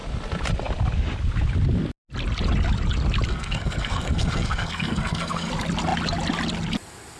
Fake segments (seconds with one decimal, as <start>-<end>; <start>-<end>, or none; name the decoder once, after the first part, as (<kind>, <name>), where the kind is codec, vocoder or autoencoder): 3.3-5.5 (codec, SNAC)